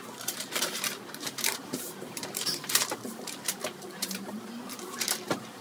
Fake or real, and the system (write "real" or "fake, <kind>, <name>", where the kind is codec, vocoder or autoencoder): fake, vocoder, BigVGAN v2